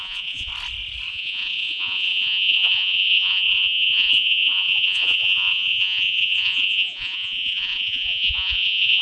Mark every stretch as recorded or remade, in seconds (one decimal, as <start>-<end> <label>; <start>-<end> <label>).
0.0-0.5 remade; 0.5-1.1 recorded; 1.1-9.0 remade